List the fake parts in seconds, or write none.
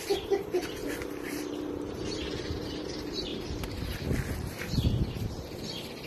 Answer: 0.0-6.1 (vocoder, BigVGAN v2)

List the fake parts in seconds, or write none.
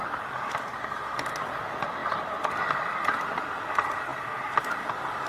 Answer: none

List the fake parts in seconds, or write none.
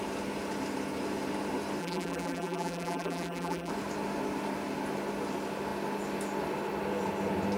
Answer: 1.8-3.7 (vocoder, BigVGAN v2)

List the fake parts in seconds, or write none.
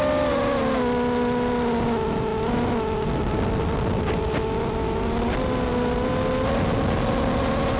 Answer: none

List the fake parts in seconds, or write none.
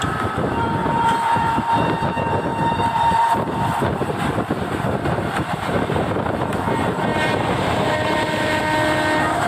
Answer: 0.8-2.1 (vocoder, BigVGAN v2); 2.5-6.1; 7.1-8.6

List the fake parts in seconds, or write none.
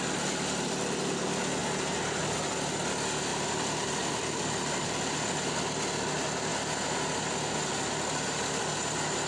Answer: 3.3-4.9 (vocoder, BigVGAN v2)